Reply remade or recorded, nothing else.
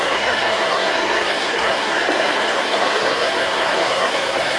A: remade